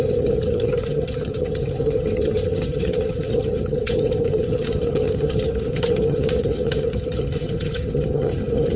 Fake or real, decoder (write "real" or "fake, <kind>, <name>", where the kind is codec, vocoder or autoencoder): fake, vocoder, HiFi-GAN